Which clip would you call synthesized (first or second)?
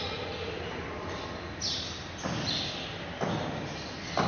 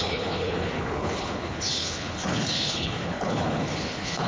second